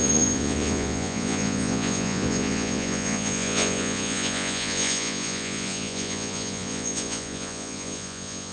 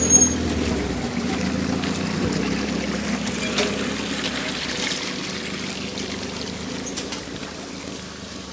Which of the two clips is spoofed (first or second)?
first